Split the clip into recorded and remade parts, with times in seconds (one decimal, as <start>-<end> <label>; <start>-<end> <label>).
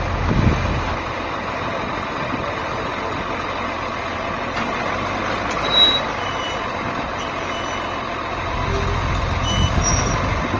0.0-10.6 recorded